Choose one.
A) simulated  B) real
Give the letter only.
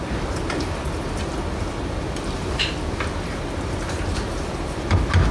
B